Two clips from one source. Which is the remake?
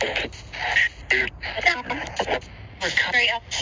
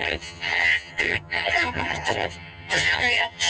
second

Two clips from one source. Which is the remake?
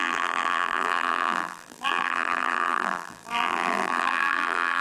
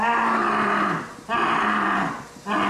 first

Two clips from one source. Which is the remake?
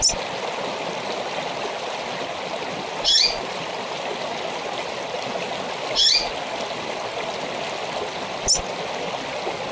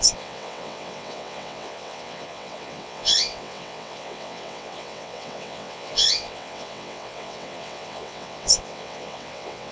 second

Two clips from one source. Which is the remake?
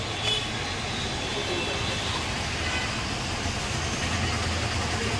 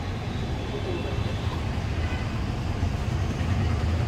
second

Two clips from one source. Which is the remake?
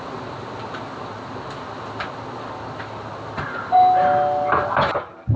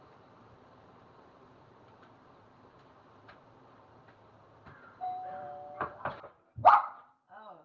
second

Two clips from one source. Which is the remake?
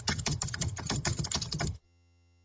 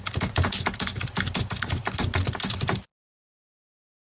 first